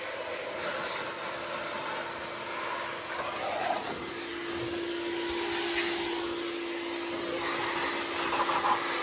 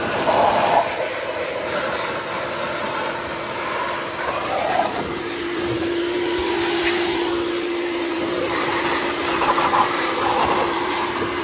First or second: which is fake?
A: second